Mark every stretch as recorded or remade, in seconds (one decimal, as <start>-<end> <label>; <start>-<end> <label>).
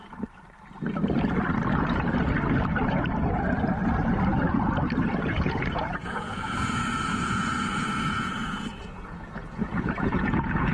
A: 0.0-5.2 recorded; 5.2-10.7 remade